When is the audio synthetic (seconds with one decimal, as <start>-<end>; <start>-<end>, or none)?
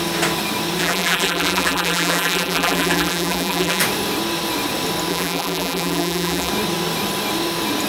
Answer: 0.8-3.8; 5.1-6.5